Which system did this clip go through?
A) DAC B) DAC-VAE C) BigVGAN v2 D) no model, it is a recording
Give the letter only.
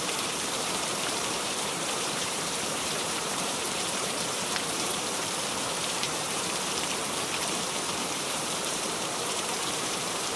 C